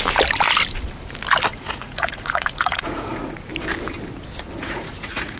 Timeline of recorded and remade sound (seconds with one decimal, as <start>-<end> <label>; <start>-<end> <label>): 0.0-1.5 recorded; 1.5-3.5 remade; 3.5-4.6 recorded; 4.6-5.4 remade